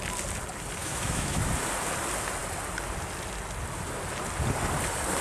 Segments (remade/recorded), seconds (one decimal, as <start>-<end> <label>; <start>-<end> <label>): 0.0-0.8 recorded; 0.8-1.4 remade; 1.4-5.2 recorded